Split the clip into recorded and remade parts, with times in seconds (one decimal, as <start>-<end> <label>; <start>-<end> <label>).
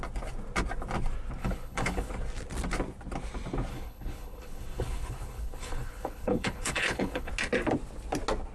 0.0-1.4 recorded; 1.4-2.1 remade; 2.1-3.7 recorded; 3.7-7.3 remade; 7.3-8.5 recorded